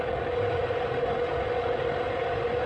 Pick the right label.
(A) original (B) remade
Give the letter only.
A